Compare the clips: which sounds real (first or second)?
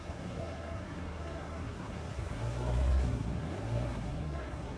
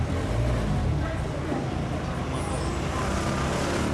second